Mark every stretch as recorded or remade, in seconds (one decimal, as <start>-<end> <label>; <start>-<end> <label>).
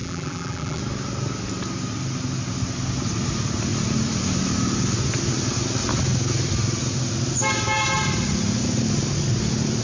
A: 0.0-0.8 remade; 0.8-9.8 recorded